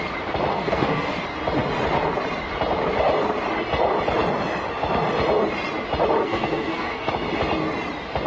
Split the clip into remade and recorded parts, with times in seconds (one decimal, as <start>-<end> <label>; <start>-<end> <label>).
0.0-0.5 recorded; 0.5-1.1 remade; 1.1-6.2 recorded; 6.2-7.1 remade; 7.1-8.3 recorded